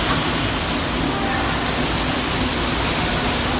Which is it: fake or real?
real